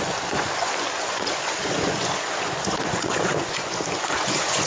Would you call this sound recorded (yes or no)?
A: no